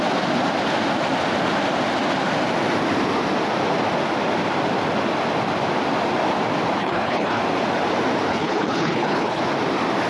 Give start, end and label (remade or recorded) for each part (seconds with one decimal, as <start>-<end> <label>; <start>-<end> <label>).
0.0-6.8 recorded; 6.8-7.4 remade; 7.4-8.3 recorded; 8.3-9.4 remade; 9.4-10.1 recorded